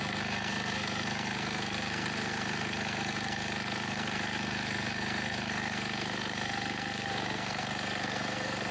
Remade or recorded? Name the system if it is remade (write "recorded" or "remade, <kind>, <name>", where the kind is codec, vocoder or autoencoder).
remade, codec, SNAC